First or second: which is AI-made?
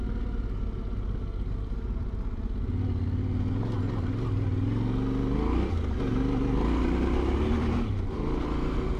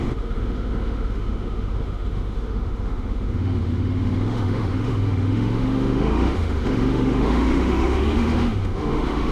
second